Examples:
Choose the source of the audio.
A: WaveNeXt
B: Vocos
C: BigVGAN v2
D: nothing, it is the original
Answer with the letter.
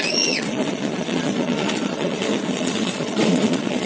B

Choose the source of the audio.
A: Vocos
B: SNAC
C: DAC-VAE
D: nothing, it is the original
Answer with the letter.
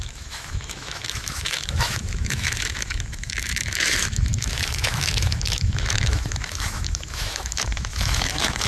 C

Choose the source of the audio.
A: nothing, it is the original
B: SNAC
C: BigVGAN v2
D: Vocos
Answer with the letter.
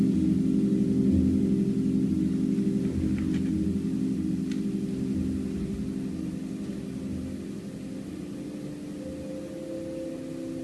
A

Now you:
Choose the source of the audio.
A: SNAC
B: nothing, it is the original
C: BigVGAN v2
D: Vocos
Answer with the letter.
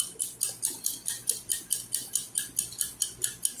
C